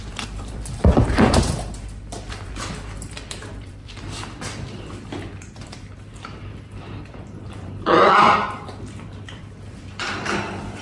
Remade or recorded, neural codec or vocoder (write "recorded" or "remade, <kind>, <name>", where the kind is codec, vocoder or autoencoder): remade, vocoder, BigVGAN v2